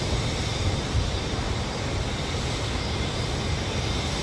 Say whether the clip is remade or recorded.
recorded